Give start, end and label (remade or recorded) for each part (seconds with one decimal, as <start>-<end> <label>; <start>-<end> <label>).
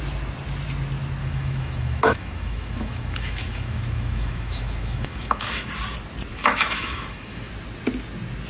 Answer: 0.0-1.2 recorded; 1.2-5.7 remade; 5.7-6.3 recorded; 6.3-7.5 remade; 7.5-8.5 recorded